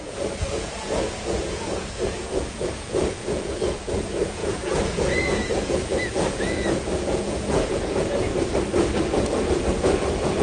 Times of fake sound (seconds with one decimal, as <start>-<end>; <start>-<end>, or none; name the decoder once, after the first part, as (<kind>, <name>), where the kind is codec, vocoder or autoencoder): 0.0-8.3 (vocoder, Vocos); 9.0-10.4